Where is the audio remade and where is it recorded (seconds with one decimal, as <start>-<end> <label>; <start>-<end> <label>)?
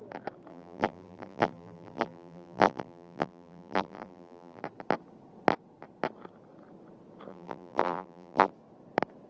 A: 0.0-0.5 recorded; 0.5-4.6 remade; 4.6-7.3 recorded; 7.3-8.5 remade; 8.5-9.3 recorded